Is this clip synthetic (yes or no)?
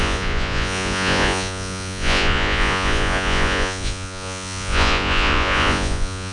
yes